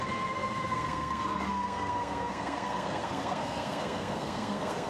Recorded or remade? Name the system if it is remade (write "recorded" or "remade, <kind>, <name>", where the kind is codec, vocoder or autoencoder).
remade, codec, SNAC